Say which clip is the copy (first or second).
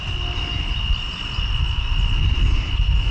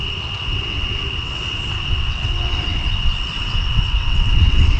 second